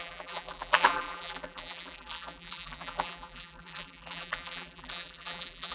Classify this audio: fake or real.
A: fake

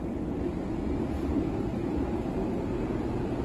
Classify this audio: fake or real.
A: real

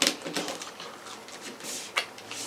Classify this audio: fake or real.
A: real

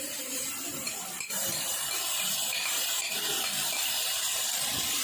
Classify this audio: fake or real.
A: fake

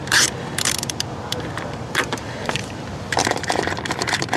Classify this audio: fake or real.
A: fake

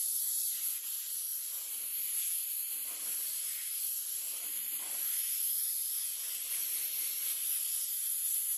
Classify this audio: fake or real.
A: fake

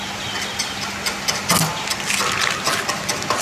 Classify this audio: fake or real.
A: real